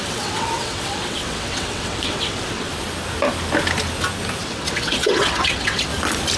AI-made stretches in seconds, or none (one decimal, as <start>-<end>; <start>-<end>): 0.0-2.7; 4.4-5.9